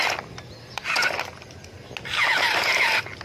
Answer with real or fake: real